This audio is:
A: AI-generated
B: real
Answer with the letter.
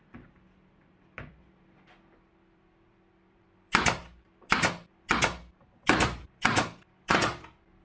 A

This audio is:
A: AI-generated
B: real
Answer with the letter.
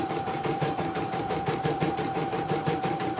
A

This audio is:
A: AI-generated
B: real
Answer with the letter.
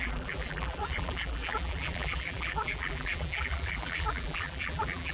A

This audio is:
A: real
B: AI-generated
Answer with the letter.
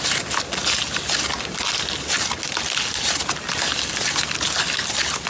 A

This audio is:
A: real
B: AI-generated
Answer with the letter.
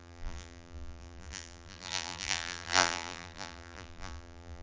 B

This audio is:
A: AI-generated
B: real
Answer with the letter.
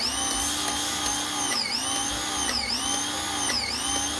B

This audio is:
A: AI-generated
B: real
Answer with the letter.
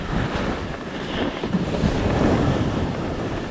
B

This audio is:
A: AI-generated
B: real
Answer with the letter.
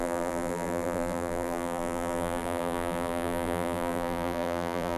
A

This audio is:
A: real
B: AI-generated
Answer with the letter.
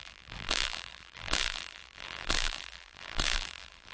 B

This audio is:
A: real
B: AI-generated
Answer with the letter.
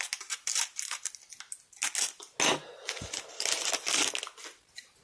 A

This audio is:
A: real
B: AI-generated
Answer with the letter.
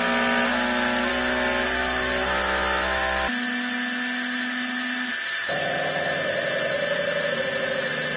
A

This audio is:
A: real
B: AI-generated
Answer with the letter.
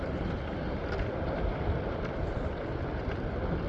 B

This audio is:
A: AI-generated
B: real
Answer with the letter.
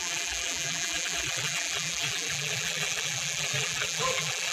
A